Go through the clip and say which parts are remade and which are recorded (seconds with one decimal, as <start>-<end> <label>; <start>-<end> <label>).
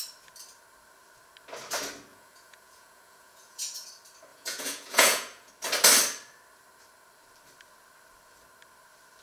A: 0.0-2.1 recorded; 2.1-3.9 remade; 3.9-4.3 recorded; 4.3-5.5 remade; 5.5-9.2 recorded